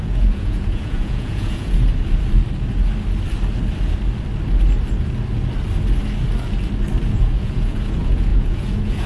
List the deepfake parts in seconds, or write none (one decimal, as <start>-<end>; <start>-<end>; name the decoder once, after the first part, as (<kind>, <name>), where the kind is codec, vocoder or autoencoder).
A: 0.0-1.9 (vocoder, Vocos); 7.1-9.1